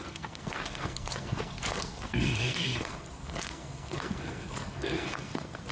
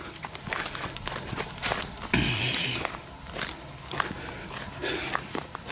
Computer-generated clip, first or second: first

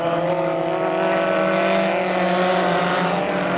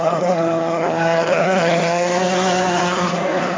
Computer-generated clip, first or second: second